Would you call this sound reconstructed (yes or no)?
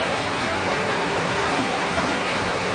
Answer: yes